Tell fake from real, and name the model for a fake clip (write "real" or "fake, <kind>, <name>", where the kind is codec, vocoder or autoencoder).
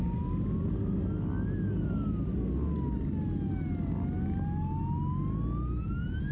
real